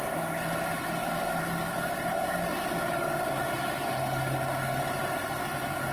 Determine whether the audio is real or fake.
real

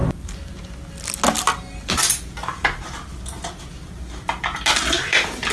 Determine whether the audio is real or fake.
real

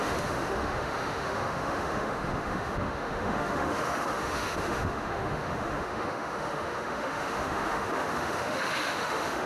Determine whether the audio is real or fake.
fake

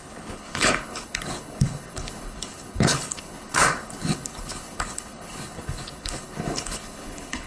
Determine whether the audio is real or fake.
fake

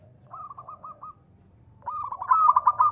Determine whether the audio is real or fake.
real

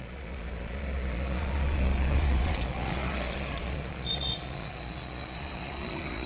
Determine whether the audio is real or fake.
fake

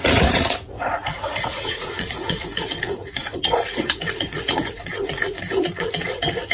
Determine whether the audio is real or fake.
fake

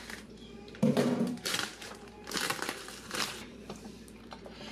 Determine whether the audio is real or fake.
fake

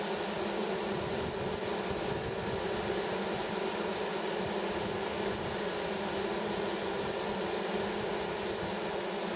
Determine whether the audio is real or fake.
real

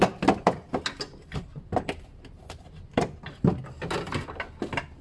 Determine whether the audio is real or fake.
real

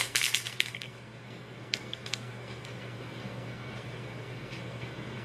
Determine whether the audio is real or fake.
fake